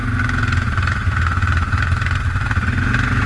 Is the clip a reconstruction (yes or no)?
no